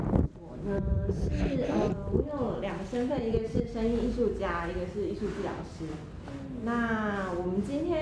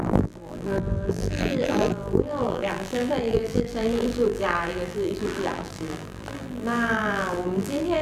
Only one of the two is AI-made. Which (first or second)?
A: second